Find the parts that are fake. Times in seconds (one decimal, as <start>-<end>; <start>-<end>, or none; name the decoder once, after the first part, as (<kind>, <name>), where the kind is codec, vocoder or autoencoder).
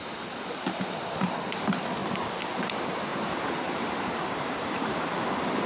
2.0-2.7 (vocoder, BigVGAN v2); 3.1-5.3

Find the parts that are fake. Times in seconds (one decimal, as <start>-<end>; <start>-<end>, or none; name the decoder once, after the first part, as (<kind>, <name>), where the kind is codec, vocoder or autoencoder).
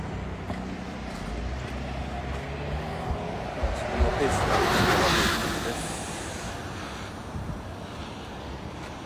none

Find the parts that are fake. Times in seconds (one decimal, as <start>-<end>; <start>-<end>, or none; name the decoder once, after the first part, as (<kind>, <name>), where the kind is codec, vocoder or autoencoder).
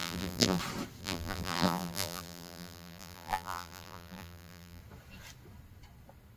0.0-0.6 (vocoder, BigVGAN v2); 1.0-4.8